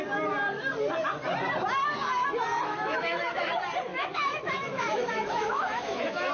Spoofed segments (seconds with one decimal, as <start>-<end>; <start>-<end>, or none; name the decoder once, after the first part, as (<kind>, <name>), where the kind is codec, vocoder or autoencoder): 2.5-3.5 (autoencoder, DAC-VAE); 3.9-6.3